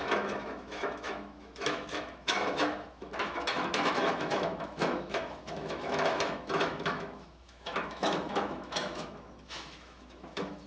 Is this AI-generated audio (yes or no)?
yes